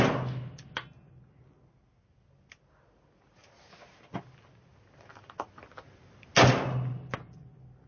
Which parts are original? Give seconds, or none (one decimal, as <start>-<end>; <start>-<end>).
0.0-7.9